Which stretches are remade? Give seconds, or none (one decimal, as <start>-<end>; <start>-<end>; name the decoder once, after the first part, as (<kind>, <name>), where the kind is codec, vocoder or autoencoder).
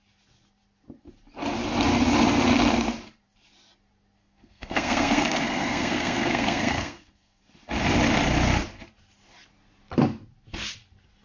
4.2-7.4 (codec, SNAC)